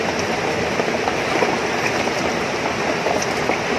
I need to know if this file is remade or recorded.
recorded